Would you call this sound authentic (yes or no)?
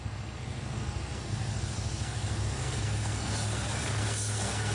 no